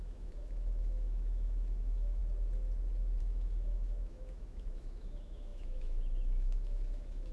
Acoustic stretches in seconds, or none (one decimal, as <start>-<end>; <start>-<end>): 2.2-3.2